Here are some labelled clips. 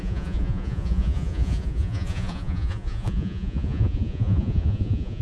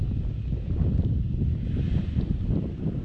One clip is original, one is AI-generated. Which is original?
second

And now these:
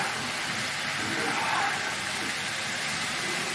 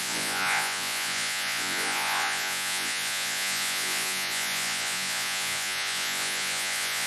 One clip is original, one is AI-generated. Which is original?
first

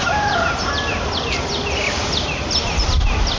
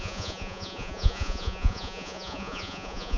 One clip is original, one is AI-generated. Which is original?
first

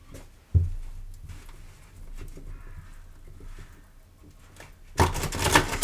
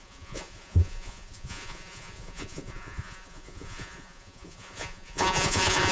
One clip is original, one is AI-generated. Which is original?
first